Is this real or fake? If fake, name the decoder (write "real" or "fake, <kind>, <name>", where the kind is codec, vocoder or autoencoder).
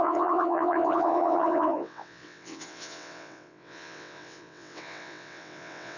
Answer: fake, vocoder, WaveNeXt